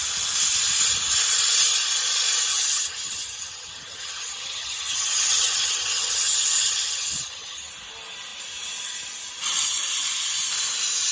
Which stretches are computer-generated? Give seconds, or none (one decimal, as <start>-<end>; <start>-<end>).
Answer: 2.5-7.7